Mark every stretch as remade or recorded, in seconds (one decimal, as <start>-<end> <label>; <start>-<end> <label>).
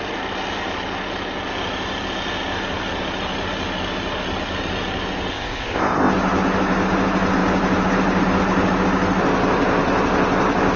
0.0-5.3 recorded; 5.3-6.1 remade; 6.1-10.8 recorded